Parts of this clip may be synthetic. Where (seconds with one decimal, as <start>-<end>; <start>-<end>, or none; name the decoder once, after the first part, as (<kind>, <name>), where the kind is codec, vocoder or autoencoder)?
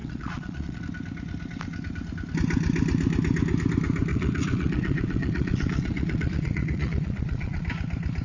0.0-0.8 (vocoder, Vocos); 4.1-7.6